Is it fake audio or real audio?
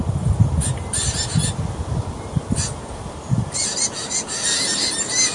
real